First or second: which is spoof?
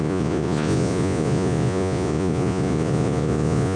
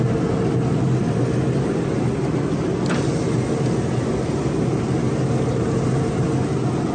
first